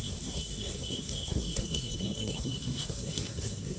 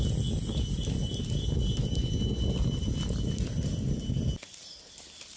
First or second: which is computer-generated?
first